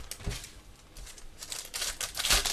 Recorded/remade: recorded